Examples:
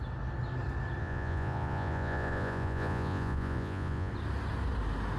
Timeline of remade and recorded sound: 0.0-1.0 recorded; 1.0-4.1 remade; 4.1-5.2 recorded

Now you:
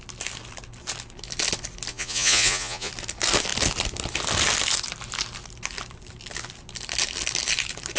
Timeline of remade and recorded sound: 0.0-1.9 recorded; 1.9-2.9 remade; 2.9-8.0 recorded

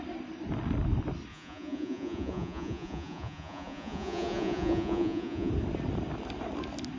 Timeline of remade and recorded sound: 0.0-1.3 recorded; 1.3-5.5 remade; 5.5-7.0 recorded

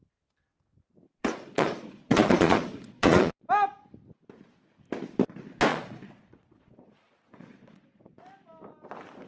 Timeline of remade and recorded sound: 0.0-1.2 recorded; 1.2-3.5 remade; 3.5-5.7 recorded; 5.7-8.2 remade; 8.2-9.3 recorded